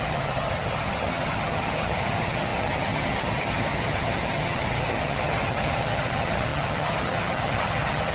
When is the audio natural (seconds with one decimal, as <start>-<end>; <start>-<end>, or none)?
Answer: none